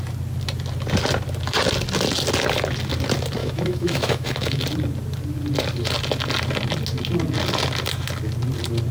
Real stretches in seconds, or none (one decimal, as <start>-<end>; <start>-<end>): 0.0-3.4; 4.6-8.9